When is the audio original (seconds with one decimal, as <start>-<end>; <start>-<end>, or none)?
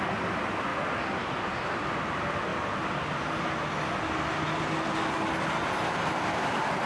0.0-6.9